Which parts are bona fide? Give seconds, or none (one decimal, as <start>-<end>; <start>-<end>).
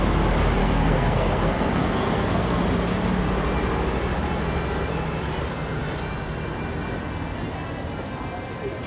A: 0.0-0.6; 2.6-8.9